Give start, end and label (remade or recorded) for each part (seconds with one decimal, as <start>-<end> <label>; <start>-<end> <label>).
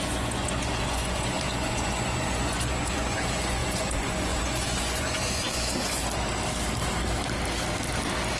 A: 0.0-6.0 remade; 6.0-8.4 recorded